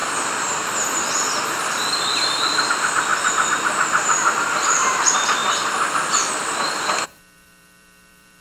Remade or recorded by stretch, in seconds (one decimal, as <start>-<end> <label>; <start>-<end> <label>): 0.0-3.1 remade; 3.1-4.3 recorded; 4.3-8.4 remade